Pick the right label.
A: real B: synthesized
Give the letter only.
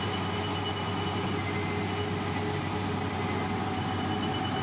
A